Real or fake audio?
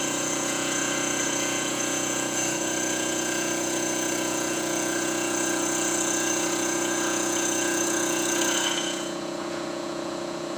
fake